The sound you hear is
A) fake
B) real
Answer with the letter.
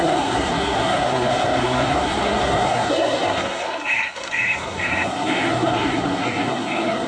A